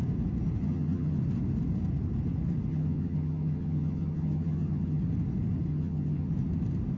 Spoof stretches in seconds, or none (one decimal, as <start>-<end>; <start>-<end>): 0.6-1.2; 2.7-5.0; 5.7-6.3